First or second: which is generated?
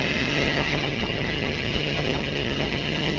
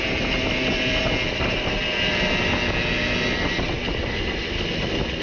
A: first